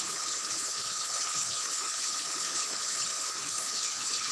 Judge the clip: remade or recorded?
remade